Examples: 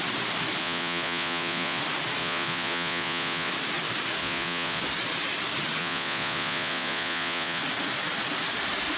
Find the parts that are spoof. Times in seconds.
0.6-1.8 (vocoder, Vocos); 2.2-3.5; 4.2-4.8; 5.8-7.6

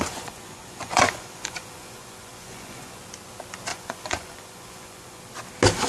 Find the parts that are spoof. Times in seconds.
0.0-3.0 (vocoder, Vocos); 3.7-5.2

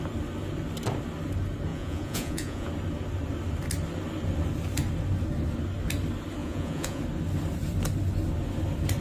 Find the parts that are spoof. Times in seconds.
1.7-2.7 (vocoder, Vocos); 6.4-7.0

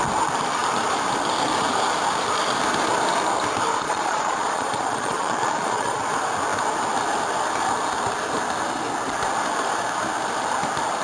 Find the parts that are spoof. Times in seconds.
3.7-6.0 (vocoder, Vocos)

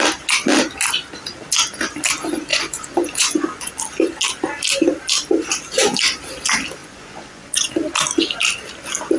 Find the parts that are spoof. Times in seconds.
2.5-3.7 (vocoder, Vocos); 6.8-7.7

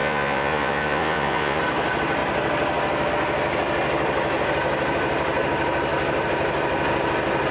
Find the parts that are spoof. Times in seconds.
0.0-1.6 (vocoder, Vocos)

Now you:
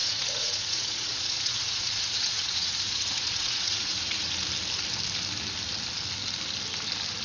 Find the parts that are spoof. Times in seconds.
0.0-4.3 (vocoder, Vocos)

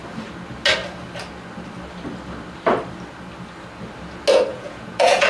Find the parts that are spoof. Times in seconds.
4.5-5.3 (vocoder, Vocos)